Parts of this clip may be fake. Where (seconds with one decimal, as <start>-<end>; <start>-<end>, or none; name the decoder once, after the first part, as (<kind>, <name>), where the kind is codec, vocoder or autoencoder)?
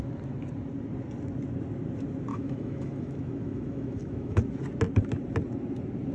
2.3-4.4 (autoencoder, DAC-VAE)